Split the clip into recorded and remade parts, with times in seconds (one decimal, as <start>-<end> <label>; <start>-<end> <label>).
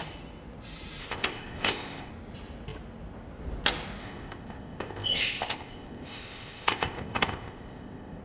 0.0-1.0 recorded; 1.0-2.1 remade; 2.1-4.0 recorded; 4.0-8.2 remade